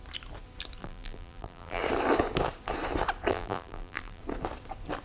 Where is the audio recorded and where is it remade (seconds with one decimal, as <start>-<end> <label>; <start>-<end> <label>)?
0.0-0.8 recorded; 0.8-1.8 remade; 1.8-3.3 recorded; 3.3-4.2 remade; 4.2-5.0 recorded